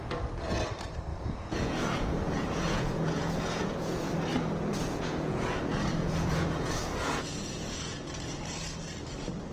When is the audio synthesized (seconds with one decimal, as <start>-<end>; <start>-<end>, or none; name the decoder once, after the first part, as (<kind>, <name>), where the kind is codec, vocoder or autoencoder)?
1.1-4.1 (vocoder, Vocos); 4.7-5.6; 6.0-8.1